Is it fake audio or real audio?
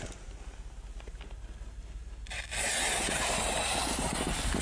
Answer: real